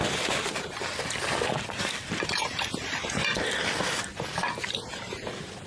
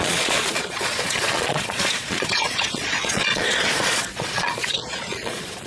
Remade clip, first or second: second